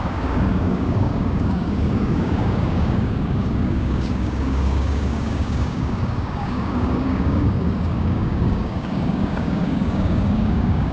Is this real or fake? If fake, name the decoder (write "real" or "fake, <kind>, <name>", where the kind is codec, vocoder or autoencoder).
fake, codec, DAC